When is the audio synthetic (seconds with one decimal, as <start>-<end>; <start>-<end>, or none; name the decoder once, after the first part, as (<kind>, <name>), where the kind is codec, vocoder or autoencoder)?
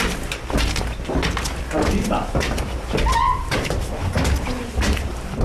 1.5-2.4 (vocoder, BigVGAN v2); 3.2-3.9